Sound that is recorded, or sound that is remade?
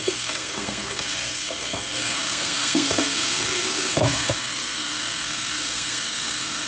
remade